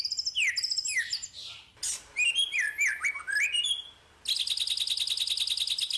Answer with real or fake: real